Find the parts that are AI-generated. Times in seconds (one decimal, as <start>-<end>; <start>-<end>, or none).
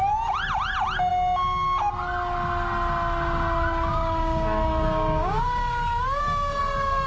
3.9-6.6